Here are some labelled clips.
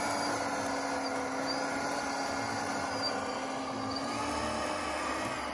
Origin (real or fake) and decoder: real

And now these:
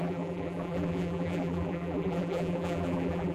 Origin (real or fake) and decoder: fake, vocoder, BigVGAN v2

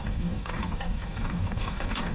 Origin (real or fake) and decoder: fake, codec, DAC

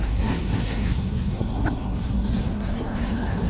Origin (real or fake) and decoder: fake, codec, SNAC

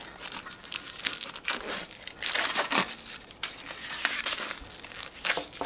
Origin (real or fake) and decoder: real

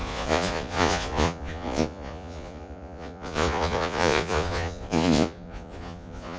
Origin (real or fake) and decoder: fake, vocoder, Vocos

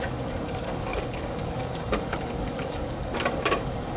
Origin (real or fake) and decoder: fake, codec, DAC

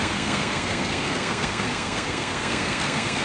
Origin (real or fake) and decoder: fake, codec, SNAC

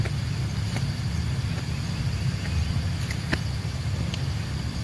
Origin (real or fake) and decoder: real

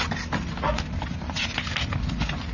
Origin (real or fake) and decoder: real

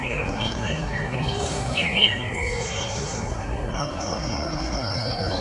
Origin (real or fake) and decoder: fake, codec, SNAC